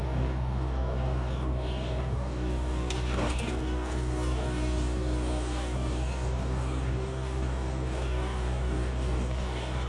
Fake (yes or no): yes